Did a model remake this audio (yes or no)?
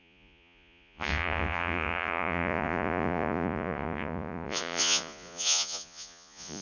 yes